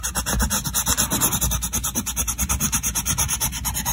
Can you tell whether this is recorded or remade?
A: recorded